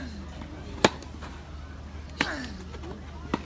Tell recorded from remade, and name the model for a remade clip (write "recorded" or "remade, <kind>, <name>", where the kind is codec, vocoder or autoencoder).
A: recorded